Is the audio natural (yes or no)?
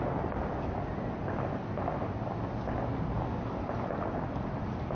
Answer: yes